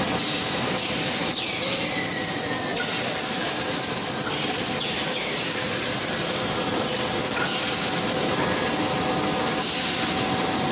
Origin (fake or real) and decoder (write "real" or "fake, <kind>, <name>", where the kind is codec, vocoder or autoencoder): real